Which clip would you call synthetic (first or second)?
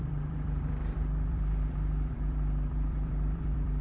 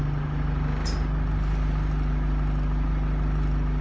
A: first